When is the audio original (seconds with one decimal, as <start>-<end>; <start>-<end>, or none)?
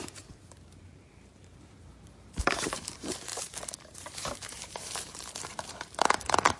1.9-2.4